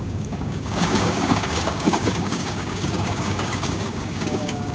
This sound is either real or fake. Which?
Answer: fake